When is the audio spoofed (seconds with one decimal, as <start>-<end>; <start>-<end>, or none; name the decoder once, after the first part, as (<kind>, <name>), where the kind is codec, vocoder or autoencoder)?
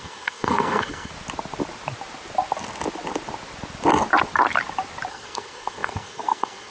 0.0-1.1 (codec, SNAC); 5.1-6.7